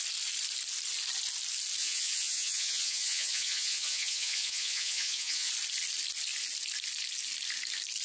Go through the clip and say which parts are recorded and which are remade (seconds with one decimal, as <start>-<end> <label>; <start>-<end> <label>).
0.0-1.8 recorded; 1.8-5.5 remade; 5.5-8.0 recorded